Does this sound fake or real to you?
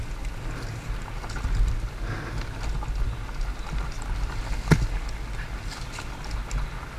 real